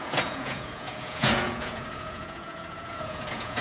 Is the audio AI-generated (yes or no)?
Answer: yes